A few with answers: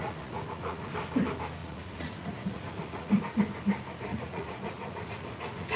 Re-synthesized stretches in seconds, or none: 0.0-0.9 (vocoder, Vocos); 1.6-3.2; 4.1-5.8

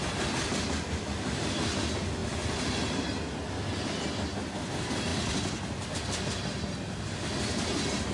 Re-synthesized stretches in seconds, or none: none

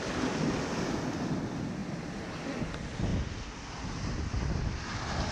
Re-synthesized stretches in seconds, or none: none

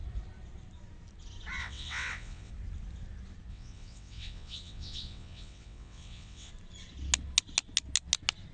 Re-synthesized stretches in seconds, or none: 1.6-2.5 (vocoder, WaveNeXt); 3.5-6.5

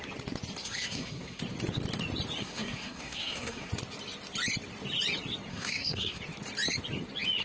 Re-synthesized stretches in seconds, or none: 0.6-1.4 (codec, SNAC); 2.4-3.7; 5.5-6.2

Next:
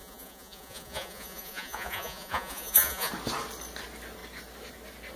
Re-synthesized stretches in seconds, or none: 0.0-3.1 (vocoder, Vocos)

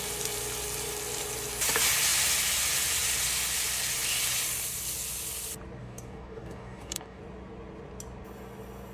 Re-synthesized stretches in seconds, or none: 5.8-7.2 (codec, DAC)